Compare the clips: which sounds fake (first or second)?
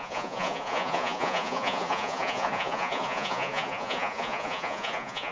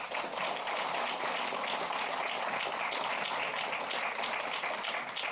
first